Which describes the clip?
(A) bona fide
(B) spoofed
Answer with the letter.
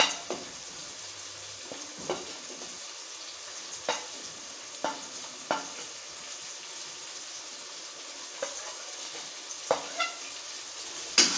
A